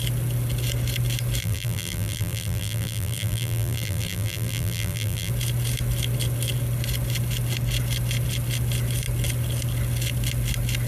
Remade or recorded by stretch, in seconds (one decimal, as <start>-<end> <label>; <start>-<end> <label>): 0.0-1.4 recorded; 1.4-5.3 remade; 5.3-10.9 recorded